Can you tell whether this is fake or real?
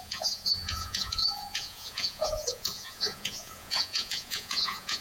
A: fake